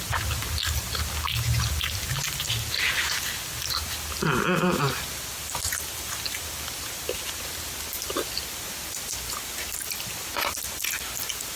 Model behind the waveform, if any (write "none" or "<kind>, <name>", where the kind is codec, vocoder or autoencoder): none